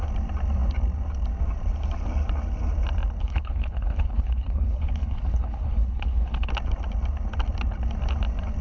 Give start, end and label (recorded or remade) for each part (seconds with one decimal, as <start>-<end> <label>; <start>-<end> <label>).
0.0-3.2 recorded; 3.2-6.5 remade; 6.5-8.6 recorded